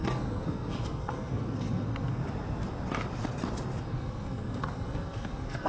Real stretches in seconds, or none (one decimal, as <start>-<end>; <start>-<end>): 2.2-3.8